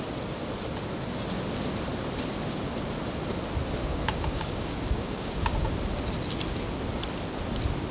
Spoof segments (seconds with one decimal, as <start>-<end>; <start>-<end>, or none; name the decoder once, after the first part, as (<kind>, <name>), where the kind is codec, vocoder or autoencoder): 3.8-5.7 (codec, DAC)